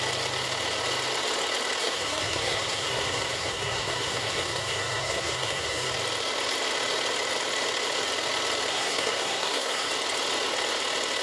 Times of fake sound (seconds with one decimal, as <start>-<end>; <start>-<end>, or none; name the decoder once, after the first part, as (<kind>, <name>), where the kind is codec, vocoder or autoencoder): 1.8-5.9 (codec, SNAC); 8.7-9.9